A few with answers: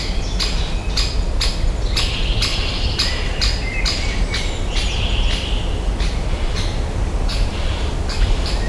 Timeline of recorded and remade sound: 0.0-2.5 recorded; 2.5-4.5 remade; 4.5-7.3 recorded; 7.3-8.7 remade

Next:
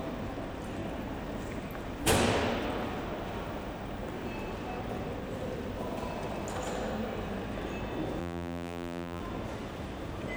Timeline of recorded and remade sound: 0.0-8.2 recorded; 8.2-9.2 remade; 9.2-10.4 recorded